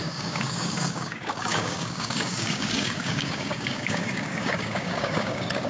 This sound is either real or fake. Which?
fake